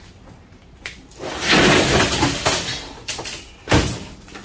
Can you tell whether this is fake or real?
real